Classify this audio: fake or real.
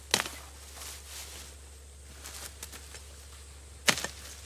real